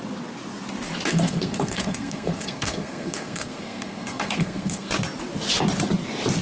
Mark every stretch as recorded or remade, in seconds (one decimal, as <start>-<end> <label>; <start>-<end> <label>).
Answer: 0.0-1.1 recorded; 1.1-4.9 remade; 4.9-6.4 recorded